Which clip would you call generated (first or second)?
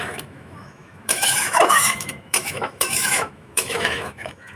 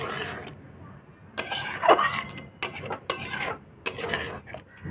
first